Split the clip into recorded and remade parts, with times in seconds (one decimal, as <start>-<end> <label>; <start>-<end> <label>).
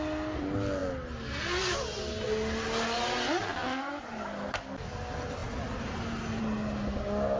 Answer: 0.0-7.4 recorded